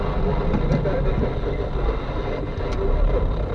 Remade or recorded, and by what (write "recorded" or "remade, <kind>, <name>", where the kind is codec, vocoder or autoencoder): recorded